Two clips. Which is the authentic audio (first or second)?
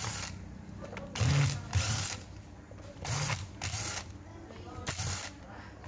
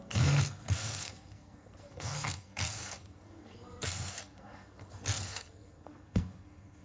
first